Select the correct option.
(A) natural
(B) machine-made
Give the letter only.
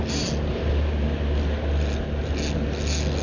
A